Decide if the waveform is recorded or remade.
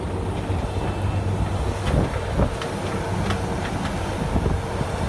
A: recorded